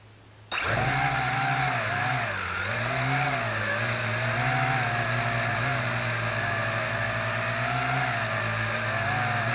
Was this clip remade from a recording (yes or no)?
no